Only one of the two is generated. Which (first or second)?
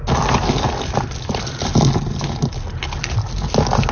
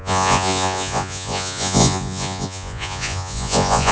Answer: second